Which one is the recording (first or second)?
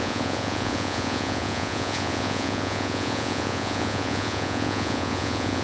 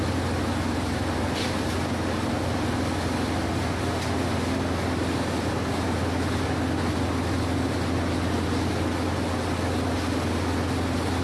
second